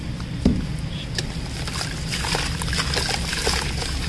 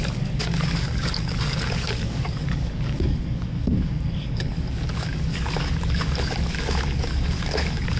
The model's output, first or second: second